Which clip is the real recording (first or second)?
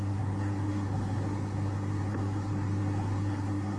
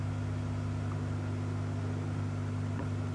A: second